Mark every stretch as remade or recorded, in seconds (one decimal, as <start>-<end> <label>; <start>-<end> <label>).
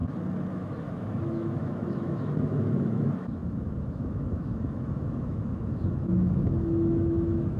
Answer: 0.0-0.5 recorded; 0.5-7.6 remade